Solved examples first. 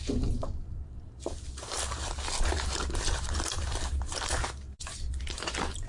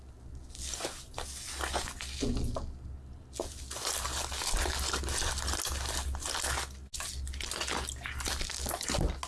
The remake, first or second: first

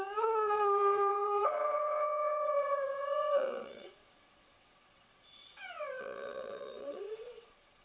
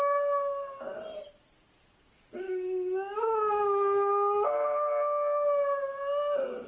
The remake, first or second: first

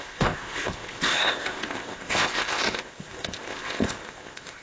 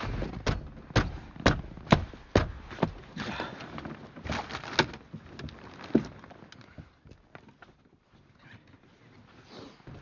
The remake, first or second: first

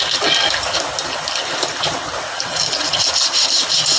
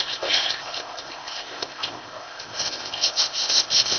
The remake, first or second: second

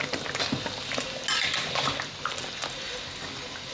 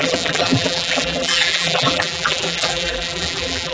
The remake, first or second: second